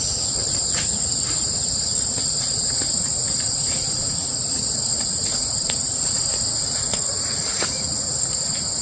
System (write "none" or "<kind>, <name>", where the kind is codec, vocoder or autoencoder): vocoder, Vocos